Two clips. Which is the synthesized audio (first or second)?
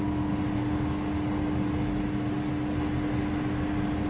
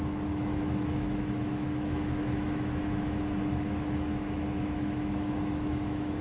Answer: second